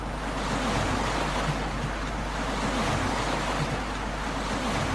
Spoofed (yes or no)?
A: no